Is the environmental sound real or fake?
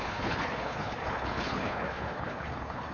fake